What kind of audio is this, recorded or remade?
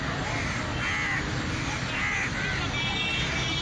recorded